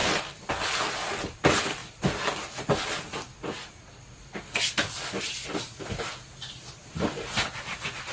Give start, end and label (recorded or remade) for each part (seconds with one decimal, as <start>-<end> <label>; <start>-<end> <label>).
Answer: 0.0-8.1 recorded